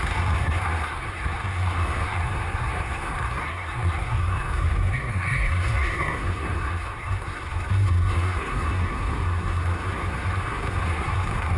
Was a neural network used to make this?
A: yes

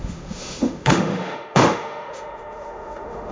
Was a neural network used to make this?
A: yes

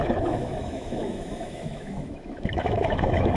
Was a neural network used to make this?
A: yes